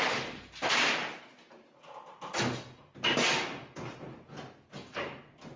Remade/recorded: recorded